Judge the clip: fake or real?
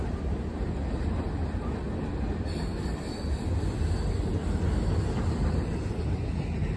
fake